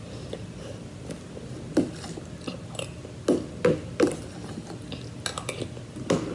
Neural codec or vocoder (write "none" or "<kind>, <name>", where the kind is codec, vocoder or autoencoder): none